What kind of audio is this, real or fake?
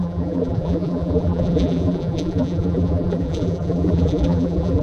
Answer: fake